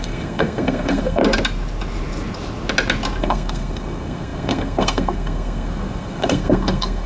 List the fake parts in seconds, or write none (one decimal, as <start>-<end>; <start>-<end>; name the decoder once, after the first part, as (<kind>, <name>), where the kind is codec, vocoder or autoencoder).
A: 0.0-1.2 (codec, SNAC); 3.2-7.1